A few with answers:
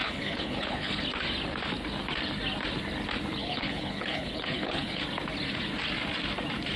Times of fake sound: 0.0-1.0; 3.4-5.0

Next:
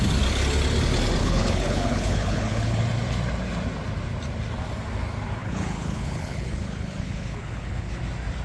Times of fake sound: 1.2-2.8; 5.4-8.0

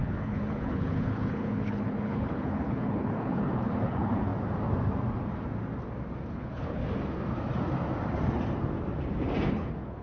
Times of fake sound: 0.0-4.3; 6.3-6.8; 9.5-10.0

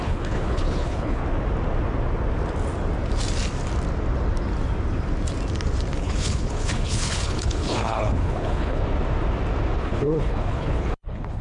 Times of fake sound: 0.0-1.2; 6.0-8.8; 9.8-11.4

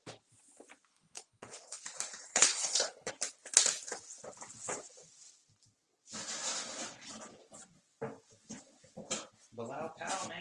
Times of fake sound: 0.9-1.8; 2.3-3.1

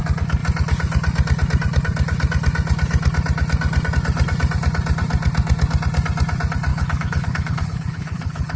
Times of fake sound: 6.7-8.6